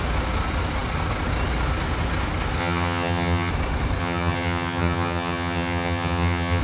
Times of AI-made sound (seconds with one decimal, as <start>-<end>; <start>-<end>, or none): 2.6-3.5; 4.0-6.6